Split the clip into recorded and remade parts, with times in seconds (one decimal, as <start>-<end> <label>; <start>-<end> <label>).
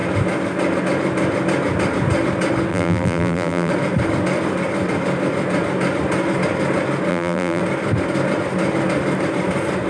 0.0-2.7 recorded; 2.7-3.7 remade; 3.7-7.1 recorded; 7.1-7.6 remade; 7.6-9.9 recorded